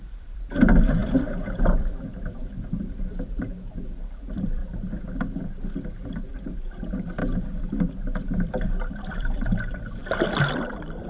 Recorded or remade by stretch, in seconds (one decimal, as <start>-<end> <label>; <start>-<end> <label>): 0.0-4.6 remade; 4.6-6.0 recorded; 6.0-10.0 remade; 10.0-10.7 recorded; 10.7-11.1 remade